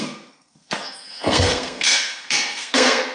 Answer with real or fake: fake